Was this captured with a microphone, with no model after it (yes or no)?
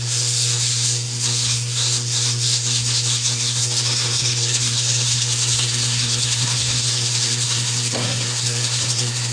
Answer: no